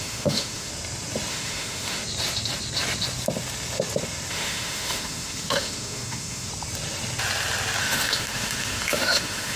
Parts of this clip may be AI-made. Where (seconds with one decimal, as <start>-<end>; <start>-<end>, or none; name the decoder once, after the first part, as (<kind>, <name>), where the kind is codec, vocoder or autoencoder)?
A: 0.0-0.7 (autoencoder, DAC-VAE); 1.3-2.0; 4.3-6.5; 7.8-9.6